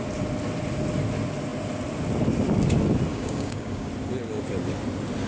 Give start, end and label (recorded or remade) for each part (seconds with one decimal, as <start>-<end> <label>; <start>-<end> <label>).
0.0-3.1 recorded; 3.1-3.9 remade; 3.9-5.3 recorded